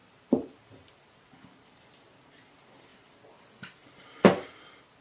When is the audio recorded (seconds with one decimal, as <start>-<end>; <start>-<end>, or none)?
2.9-5.0

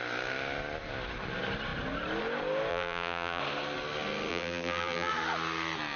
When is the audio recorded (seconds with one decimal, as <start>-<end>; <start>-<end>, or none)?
0.0-2.7; 3.4-4.3; 5.1-6.0